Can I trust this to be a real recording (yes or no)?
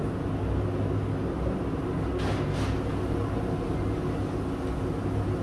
yes